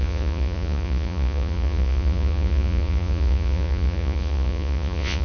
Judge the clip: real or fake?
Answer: fake